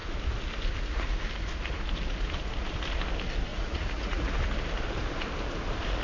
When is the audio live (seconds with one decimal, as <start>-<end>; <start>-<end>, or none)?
0.0-3.5; 4.3-6.0